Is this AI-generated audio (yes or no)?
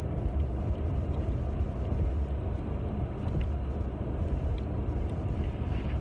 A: no